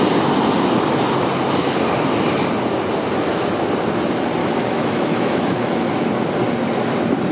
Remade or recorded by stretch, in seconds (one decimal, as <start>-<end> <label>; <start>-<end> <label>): 0.0-4.4 recorded; 4.4-5.9 remade; 5.9-7.3 recorded